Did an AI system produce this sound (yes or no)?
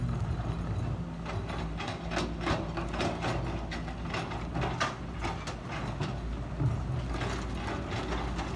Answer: no